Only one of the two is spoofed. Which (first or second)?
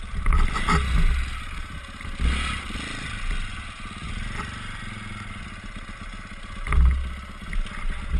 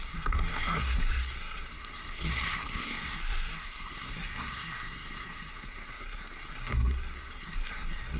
second